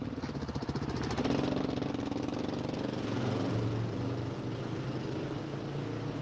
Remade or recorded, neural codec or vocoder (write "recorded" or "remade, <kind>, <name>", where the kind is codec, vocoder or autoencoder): recorded